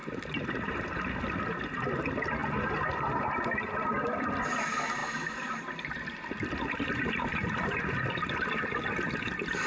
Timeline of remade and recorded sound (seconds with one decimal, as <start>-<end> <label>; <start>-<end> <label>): 0.0-9.7 recorded